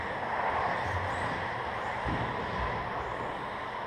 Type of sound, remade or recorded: recorded